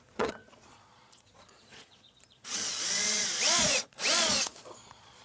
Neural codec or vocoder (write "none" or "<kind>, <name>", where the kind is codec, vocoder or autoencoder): vocoder, Vocos